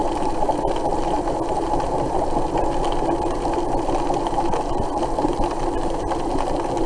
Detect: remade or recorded recorded